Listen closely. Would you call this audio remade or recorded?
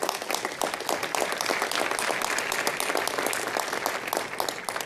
recorded